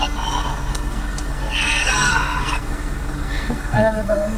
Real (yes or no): no